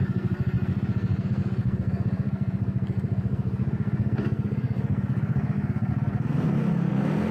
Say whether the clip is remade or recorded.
remade